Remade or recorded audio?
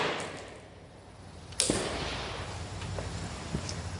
recorded